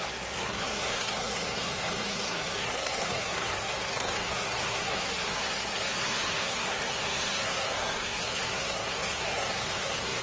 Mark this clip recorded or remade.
remade